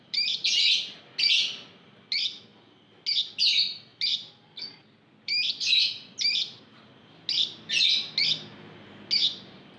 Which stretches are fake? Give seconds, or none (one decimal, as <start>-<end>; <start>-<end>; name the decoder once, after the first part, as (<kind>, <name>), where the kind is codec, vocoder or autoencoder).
9.2-9.8 (vocoder, BigVGAN v2)